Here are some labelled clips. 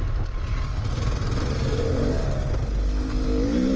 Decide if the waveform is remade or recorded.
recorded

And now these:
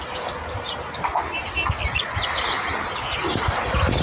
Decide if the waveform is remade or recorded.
recorded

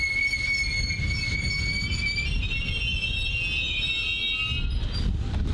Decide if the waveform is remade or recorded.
recorded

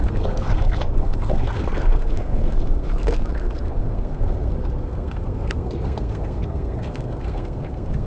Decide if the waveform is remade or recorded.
remade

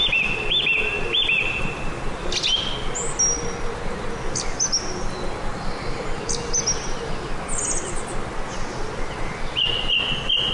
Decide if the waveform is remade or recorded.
recorded